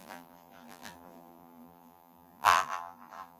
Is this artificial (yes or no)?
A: yes